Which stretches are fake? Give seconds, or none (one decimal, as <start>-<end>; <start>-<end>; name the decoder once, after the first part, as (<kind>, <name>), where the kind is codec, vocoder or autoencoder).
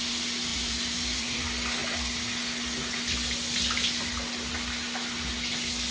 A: 0.5-1.4 (vocoder, BigVGAN v2)